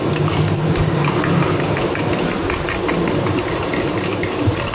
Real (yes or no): yes